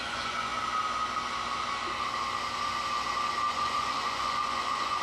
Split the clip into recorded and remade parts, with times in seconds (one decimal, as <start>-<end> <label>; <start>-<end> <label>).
0.0-0.5 remade; 0.5-3.5 recorded; 3.5-5.0 remade